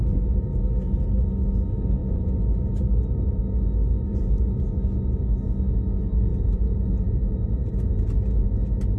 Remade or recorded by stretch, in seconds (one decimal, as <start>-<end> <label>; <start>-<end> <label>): 0.0-1.2 remade; 1.2-2.0 recorded; 2.0-3.4 remade; 3.4-4.1 recorded; 4.1-4.6 remade; 4.6-6.3 recorded; 6.3-7.7 remade; 7.7-9.0 recorded